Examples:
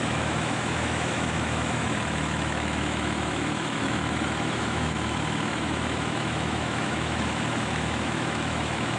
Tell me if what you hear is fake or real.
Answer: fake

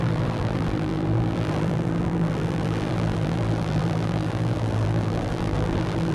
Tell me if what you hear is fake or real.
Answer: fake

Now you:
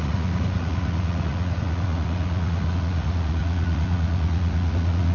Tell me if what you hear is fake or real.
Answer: fake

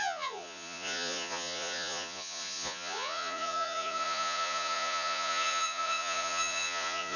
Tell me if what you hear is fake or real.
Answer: fake